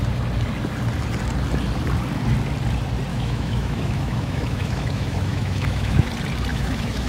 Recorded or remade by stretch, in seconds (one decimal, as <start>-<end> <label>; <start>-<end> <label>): 0.0-3.1 recorded; 3.1-6.1 remade; 6.1-6.5 recorded; 6.5-7.1 remade